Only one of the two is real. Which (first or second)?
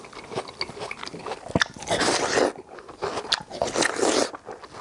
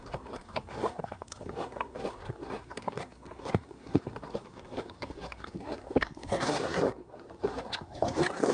first